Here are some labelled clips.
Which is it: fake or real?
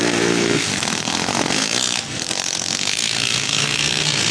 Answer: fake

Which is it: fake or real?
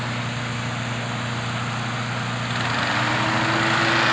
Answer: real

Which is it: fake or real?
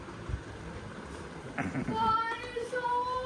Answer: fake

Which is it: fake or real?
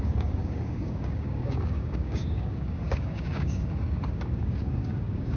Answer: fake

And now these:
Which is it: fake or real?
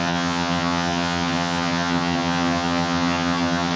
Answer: fake